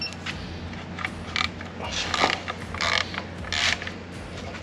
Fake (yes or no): no